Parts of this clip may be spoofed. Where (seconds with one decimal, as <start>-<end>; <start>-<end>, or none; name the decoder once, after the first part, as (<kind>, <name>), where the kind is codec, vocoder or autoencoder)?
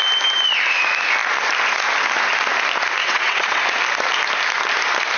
3.0-3.6 (vocoder, WaveNeXt)